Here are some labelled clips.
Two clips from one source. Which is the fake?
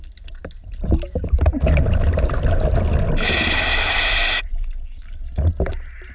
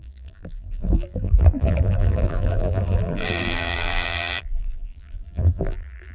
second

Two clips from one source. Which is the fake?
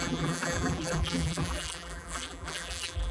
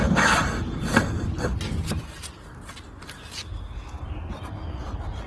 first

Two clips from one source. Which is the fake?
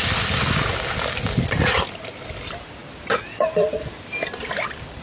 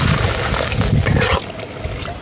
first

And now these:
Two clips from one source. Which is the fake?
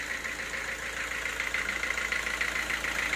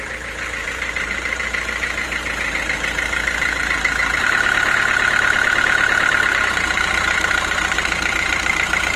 second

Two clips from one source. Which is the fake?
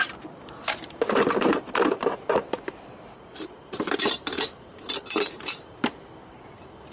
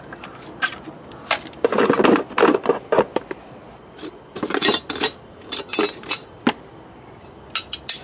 first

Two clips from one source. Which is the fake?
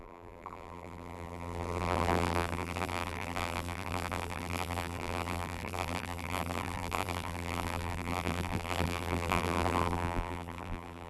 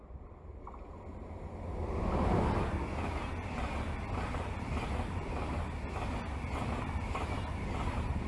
first